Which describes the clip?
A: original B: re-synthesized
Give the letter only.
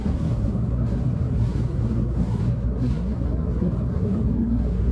B